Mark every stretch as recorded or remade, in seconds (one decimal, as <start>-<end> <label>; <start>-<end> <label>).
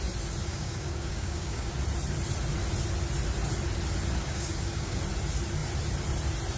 0.0-0.4 recorded; 0.4-1.7 remade; 1.7-4.2 recorded; 4.2-5.0 remade; 5.0-6.6 recorded